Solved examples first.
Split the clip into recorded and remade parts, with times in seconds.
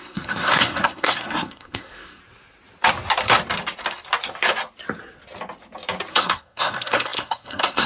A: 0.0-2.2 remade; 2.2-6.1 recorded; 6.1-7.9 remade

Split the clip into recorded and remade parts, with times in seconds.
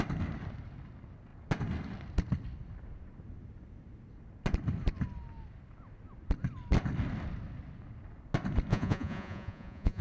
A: 0.0-8.7 recorded; 8.7-10.0 remade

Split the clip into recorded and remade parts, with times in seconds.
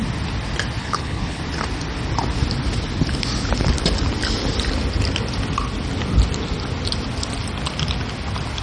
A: 0.0-0.8 recorded; 0.8-1.4 remade; 1.4-8.6 recorded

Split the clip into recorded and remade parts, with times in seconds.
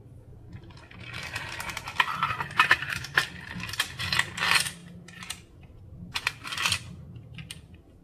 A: 0.0-8.0 recorded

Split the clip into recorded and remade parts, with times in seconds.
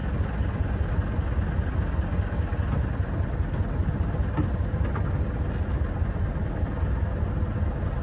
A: 0.0-8.0 recorded